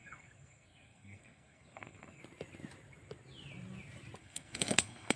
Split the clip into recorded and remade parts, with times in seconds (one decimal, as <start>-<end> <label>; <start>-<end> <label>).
0.0-2.2 remade; 2.2-4.2 recorded; 4.2-5.2 remade

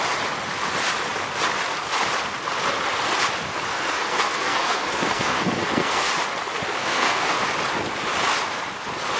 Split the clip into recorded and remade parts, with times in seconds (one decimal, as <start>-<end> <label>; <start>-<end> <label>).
0.0-3.7 recorded; 3.7-6.1 remade; 6.1-6.8 recorded; 6.8-7.4 remade; 7.4-9.2 recorded

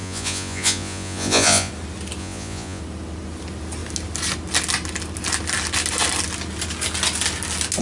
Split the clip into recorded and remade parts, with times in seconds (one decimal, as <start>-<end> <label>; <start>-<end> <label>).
0.0-1.7 remade; 1.7-2.2 recorded; 2.2-2.8 remade; 2.8-7.8 recorded

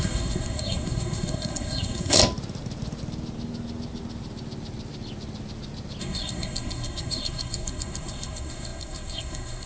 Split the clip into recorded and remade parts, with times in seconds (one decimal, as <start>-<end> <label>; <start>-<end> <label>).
0.0-2.2 remade; 2.2-6.0 recorded; 6.0-9.7 remade

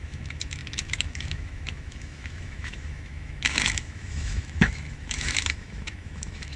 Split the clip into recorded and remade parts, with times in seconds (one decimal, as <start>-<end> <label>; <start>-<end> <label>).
0.0-6.6 remade